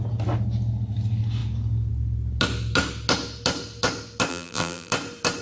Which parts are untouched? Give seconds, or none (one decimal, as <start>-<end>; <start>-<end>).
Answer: 0.0-4.3; 4.9-5.4